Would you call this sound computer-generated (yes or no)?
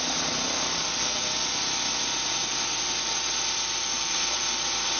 no